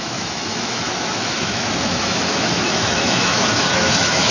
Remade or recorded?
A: remade